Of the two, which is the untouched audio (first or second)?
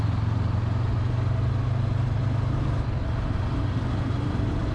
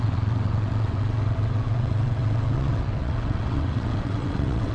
first